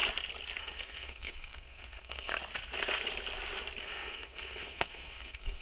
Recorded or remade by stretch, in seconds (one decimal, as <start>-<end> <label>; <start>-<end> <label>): 0.0-0.6 recorded; 0.6-2.3 remade; 2.3-3.8 recorded; 3.8-5.6 remade